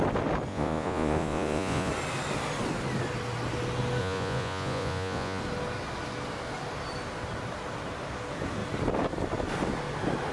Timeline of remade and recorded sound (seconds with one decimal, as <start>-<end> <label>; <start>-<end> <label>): 0.0-0.5 recorded; 0.5-1.9 remade; 1.9-4.0 recorded; 4.0-5.4 remade; 5.4-10.3 recorded